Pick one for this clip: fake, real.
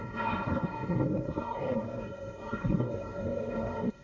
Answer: fake